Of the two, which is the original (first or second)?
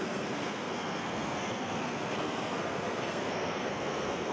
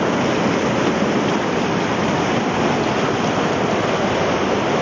second